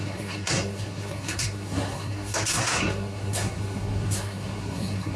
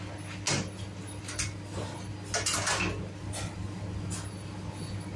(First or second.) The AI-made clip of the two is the first